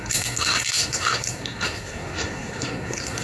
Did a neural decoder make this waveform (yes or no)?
yes